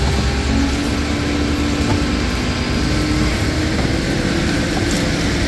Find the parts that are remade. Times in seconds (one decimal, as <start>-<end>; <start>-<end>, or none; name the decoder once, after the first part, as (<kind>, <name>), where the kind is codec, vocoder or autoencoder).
none